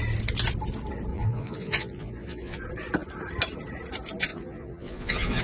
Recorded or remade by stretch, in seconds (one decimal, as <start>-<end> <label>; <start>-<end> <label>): 0.0-1.1 recorded; 1.1-2.6 remade; 2.6-4.3 recorded; 4.3-5.4 remade